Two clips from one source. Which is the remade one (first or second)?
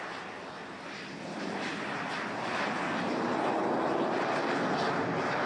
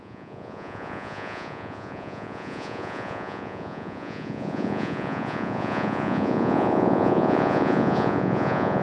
second